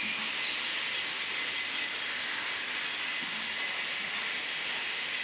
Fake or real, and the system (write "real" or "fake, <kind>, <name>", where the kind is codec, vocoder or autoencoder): real